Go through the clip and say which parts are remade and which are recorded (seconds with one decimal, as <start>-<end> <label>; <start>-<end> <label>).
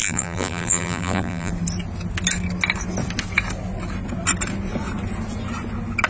0.0-1.5 remade; 1.5-6.1 recorded